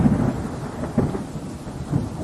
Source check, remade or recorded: recorded